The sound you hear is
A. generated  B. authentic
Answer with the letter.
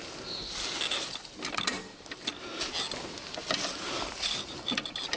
B